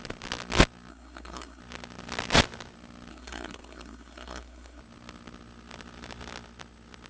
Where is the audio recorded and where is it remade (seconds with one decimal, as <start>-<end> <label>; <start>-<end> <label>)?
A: 0.0-0.9 recorded; 0.9-1.6 remade; 1.6-3.1 recorded; 3.1-4.8 remade; 4.8-7.1 recorded